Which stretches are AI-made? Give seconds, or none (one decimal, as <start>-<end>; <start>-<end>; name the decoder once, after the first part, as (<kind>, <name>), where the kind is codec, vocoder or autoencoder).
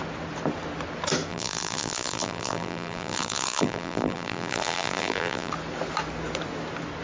1.3-5.5 (vocoder, BigVGAN v2)